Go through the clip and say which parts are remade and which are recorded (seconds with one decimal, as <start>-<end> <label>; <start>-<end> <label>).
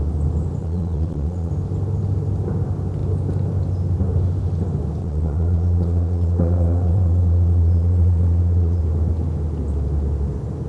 0.0-0.6 recorded; 0.6-1.5 remade; 1.5-5.0 recorded; 5.0-8.8 remade; 8.8-10.7 recorded